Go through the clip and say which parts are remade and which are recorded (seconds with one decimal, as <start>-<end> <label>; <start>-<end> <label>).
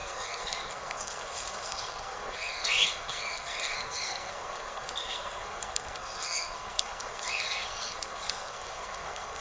0.0-9.4 remade